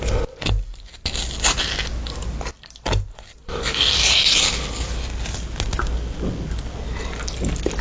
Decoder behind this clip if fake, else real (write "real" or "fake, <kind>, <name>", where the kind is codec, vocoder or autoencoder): real